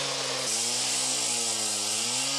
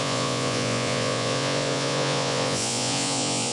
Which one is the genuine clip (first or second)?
first